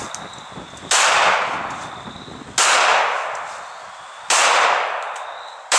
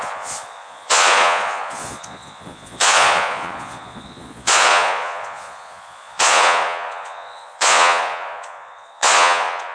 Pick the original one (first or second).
first